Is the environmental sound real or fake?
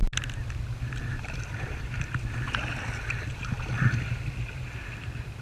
real